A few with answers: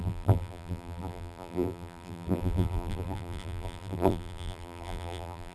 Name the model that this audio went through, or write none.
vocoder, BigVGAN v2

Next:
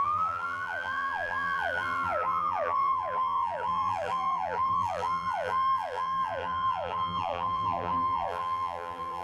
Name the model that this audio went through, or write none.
vocoder, BigVGAN v2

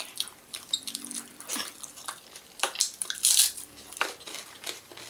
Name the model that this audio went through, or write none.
vocoder, BigVGAN v2